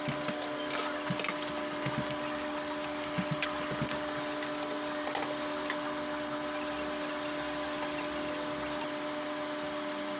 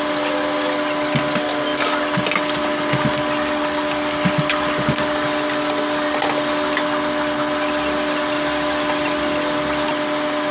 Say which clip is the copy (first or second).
first